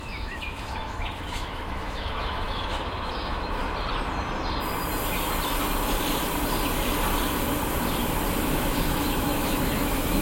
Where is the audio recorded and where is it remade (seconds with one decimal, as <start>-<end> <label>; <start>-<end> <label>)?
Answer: 0.0-3.6 remade; 3.6-8.4 recorded; 8.4-10.2 remade